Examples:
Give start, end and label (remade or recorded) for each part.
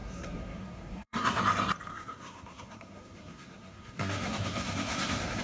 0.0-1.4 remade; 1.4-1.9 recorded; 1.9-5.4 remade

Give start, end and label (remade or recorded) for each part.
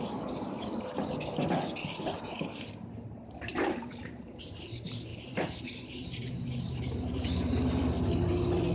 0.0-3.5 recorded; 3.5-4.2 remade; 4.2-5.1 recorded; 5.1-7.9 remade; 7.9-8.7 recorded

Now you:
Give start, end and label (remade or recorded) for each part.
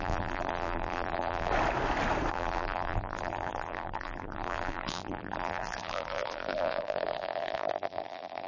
0.0-1.5 remade; 1.5-2.3 recorded; 2.3-8.5 remade